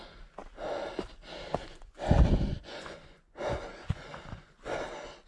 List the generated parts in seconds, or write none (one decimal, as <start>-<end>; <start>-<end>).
1.6-4.8